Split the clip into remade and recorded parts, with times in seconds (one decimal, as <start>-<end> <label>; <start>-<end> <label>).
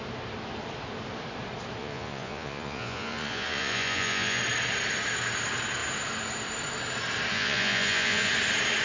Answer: 0.0-1.8 recorded; 1.8-4.4 remade; 4.4-7.3 recorded; 7.3-8.3 remade; 8.3-8.8 recorded